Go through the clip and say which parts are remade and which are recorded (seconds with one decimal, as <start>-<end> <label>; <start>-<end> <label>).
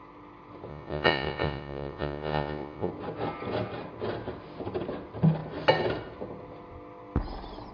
0.0-0.7 recorded; 0.7-2.9 remade; 2.9-7.7 recorded